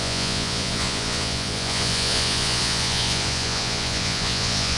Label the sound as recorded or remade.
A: remade